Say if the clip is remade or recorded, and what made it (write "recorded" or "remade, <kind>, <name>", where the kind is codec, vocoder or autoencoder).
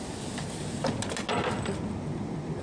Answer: recorded